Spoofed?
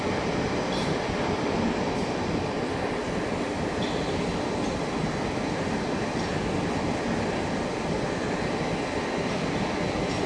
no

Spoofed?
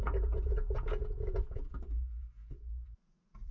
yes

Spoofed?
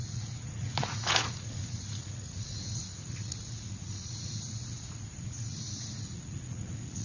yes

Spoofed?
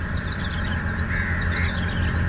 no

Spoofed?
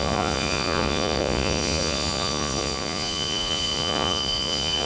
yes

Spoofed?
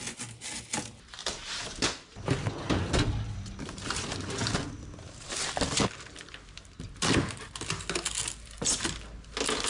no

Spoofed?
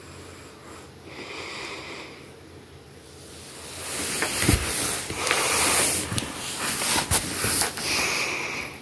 no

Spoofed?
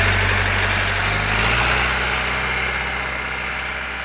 no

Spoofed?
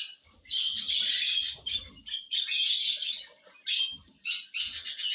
no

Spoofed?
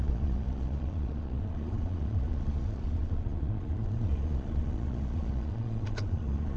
yes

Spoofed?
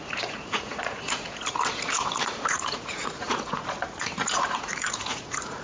yes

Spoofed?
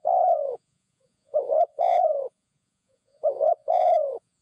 yes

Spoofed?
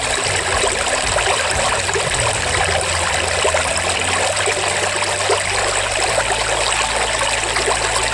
no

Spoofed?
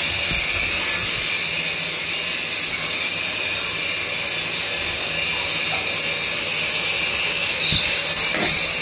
no